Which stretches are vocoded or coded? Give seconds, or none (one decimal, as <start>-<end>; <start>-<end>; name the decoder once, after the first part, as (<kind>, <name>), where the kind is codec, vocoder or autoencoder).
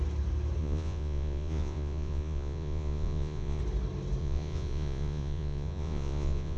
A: 0.6-3.6 (vocoder, Vocos); 4.2-6.6